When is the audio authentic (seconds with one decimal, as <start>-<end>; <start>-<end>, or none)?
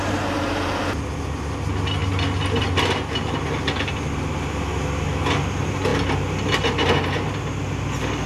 0.0-8.3